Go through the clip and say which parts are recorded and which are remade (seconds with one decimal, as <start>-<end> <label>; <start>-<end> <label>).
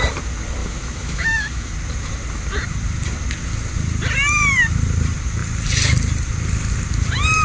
0.0-0.6 recorded; 0.6-1.7 remade; 1.7-7.4 recorded